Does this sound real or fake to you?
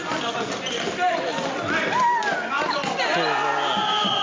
real